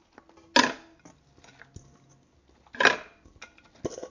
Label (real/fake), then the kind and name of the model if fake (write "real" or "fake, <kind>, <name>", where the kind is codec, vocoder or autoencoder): real